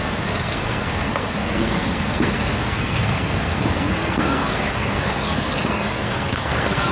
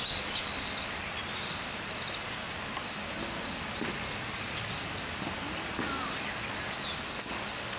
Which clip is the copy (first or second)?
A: first